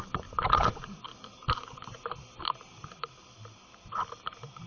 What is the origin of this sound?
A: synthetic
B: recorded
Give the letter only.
B